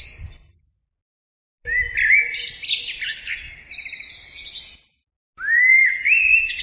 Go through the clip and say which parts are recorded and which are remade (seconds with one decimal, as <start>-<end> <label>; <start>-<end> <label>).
0.0-6.6 recorded